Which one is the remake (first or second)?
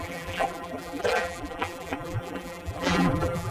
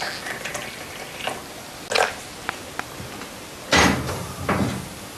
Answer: first